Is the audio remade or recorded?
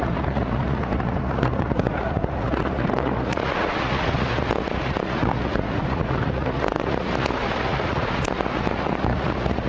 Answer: remade